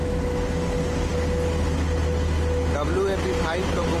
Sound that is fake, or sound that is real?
real